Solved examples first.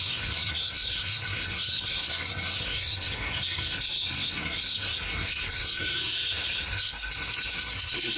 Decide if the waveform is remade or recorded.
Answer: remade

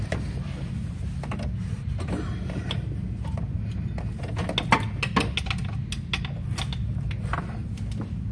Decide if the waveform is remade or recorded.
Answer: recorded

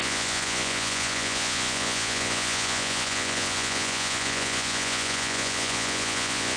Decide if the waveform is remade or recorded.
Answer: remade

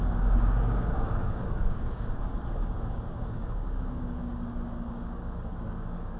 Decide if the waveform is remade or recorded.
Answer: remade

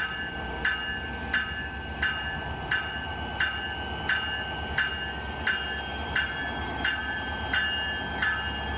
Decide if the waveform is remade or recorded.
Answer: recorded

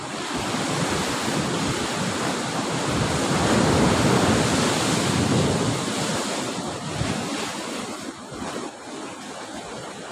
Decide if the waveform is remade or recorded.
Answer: recorded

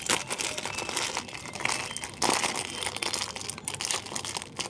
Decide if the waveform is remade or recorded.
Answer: recorded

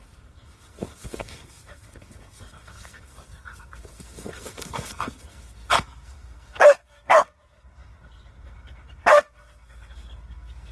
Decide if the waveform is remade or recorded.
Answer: remade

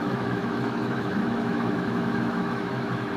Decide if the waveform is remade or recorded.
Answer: remade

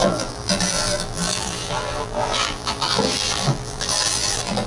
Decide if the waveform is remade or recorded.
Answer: remade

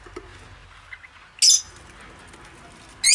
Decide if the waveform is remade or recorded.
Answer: recorded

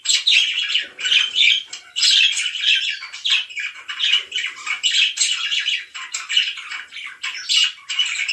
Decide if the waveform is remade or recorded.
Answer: recorded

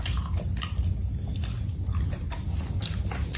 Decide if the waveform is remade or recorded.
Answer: recorded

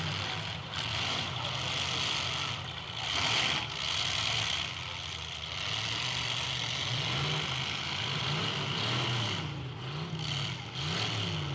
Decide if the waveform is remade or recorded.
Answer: recorded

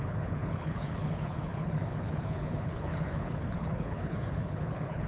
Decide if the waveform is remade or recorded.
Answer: remade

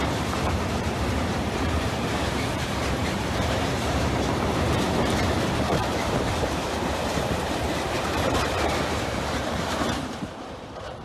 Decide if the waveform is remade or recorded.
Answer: remade